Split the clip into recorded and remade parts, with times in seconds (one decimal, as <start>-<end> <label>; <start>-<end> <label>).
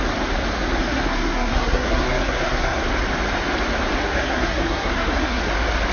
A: 0.0-0.8 recorded; 0.8-2.8 remade; 2.8-4.0 recorded; 4.0-5.5 remade; 5.5-5.9 recorded